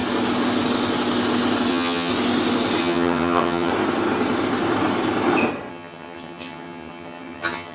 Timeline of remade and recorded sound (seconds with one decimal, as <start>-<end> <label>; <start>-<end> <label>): 0.0-1.7 recorded; 1.7-2.1 remade; 2.1-2.8 recorded; 2.8-3.7 remade; 3.7-5.7 recorded; 5.7-7.7 remade